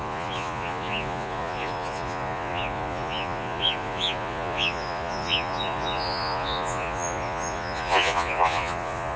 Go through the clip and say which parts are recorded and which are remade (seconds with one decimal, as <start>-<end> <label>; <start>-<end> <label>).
0.0-9.2 remade